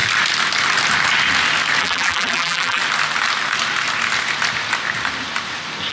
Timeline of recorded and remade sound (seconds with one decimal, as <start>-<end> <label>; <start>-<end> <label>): 0.0-1.8 recorded; 1.8-2.8 remade; 2.8-5.9 recorded

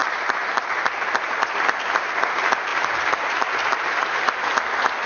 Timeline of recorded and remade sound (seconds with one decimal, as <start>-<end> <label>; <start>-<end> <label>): 0.0-1.5 remade; 1.5-2.7 recorded; 2.7-4.1 remade; 4.1-5.1 recorded

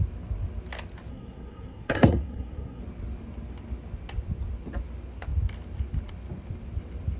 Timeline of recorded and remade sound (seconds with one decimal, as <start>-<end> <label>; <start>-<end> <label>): 0.0-1.1 recorded; 1.1-2.8 remade; 2.8-7.2 recorded

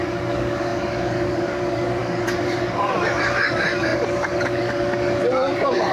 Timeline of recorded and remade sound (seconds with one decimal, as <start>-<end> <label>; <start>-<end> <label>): 0.0-5.9 remade

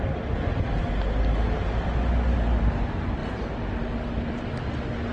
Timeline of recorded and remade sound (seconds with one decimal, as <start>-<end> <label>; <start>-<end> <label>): 0.0-5.1 recorded